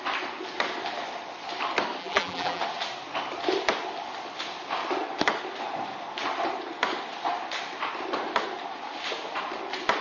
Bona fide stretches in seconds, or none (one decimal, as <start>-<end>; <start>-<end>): 0.0-2.0; 2.6-10.0